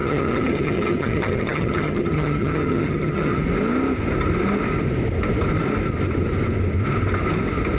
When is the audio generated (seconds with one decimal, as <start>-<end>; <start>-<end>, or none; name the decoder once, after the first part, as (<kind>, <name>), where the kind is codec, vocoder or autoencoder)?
0.0-3.4 (vocoder, HiFi-GAN)